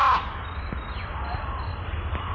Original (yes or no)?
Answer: yes